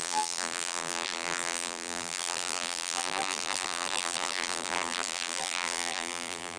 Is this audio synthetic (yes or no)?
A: yes